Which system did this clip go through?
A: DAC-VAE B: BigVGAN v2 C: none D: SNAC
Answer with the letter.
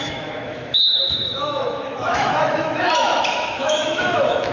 A